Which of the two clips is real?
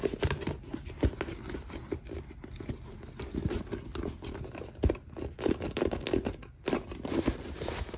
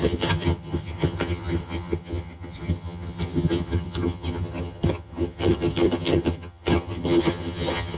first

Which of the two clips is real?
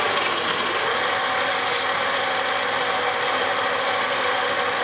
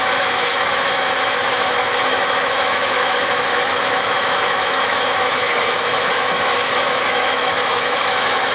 first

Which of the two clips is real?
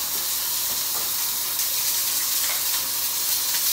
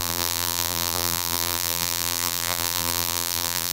first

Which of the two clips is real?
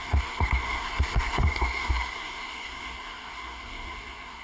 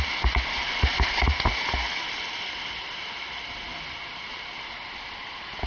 second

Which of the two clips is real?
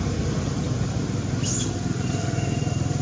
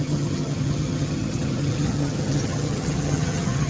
first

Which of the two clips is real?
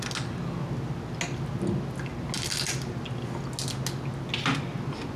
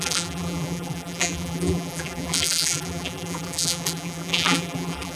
first